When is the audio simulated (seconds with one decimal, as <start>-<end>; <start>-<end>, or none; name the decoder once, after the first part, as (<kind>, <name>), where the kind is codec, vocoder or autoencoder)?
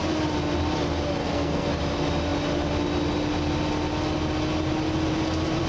1.2-1.7 (codec, SNAC)